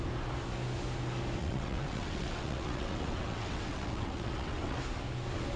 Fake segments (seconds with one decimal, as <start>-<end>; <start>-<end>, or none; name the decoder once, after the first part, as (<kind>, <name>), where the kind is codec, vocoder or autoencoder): 1.4-4.8 (vocoder, WaveNeXt)